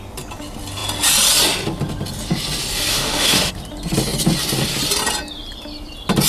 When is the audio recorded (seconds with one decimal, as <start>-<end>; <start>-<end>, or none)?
0.0-2.9; 3.5-6.3